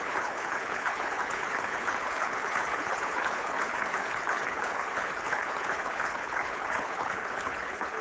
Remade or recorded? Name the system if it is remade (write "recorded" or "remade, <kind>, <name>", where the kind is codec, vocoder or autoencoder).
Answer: remade, codec, HILCodec